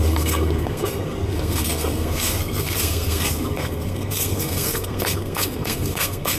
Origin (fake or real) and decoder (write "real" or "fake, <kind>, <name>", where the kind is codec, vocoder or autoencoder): fake, codec, SNAC